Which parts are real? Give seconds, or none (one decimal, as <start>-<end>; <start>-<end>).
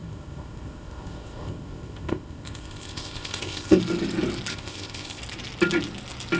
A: 3.8-4.5; 5.2-6.4